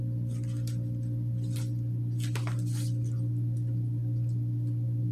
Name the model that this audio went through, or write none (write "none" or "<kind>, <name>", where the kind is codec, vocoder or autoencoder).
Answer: none